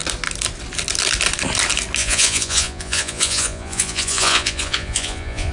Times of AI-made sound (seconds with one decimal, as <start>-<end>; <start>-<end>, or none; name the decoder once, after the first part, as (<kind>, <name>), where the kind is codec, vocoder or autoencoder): 2.0-5.5 (vocoder, Vocos)